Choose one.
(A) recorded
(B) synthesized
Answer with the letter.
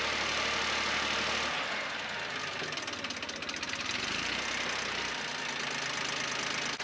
A